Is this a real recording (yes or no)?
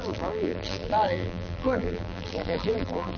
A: no